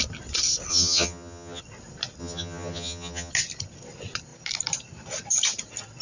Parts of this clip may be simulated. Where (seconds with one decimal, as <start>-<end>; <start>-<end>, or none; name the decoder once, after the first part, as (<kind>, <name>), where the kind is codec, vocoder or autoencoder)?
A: 0.7-1.6 (vocoder, HiFi-GAN); 2.2-3.3